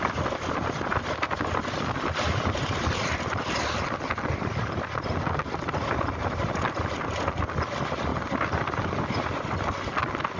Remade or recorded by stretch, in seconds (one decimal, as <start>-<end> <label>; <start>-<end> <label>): 0.0-10.4 recorded